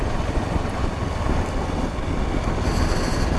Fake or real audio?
real